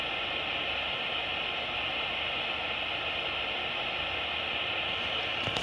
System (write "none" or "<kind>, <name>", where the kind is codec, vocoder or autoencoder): none